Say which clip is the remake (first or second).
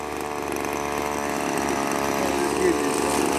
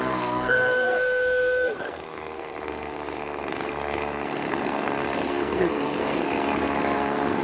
second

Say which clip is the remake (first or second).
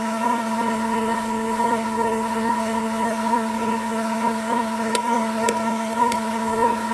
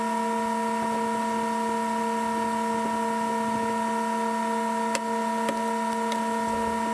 first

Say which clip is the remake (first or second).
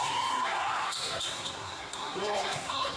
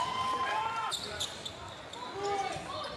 first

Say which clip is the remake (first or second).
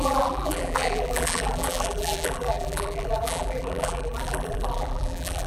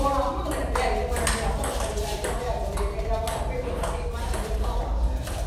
first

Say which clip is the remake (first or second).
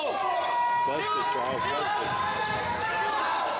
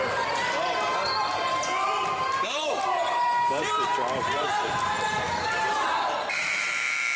second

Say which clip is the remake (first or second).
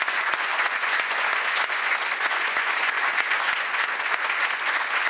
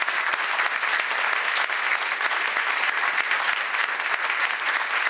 first